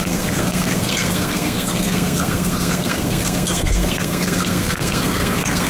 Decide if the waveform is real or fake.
fake